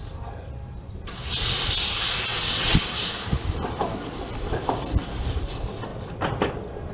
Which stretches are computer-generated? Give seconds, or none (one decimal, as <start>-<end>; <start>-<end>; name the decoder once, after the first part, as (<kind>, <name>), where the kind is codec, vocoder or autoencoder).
2.3-2.8 (vocoder, WaveNeXt)